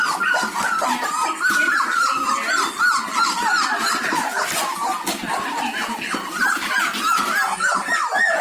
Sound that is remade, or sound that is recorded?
remade